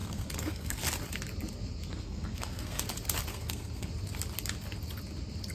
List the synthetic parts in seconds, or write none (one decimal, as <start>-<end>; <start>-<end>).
0.0-0.8; 1.9-2.8; 3.3-3.9